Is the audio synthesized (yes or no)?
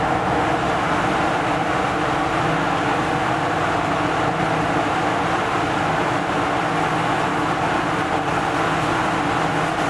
no